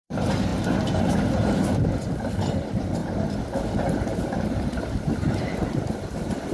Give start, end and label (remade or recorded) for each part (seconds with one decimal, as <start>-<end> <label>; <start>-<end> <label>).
0.0-0.5 remade; 0.5-1.0 recorded; 1.0-3.0 remade; 3.0-5.7 recorded; 5.7-6.5 remade